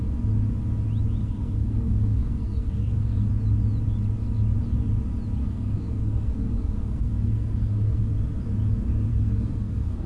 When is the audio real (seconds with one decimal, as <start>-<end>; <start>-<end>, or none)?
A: 0.0-1.2; 3.3-5.4; 8.0-9.1